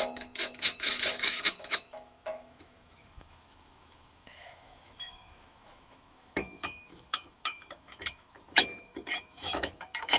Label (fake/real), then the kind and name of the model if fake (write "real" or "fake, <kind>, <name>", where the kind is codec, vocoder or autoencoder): fake, autoencoder, DAC-VAE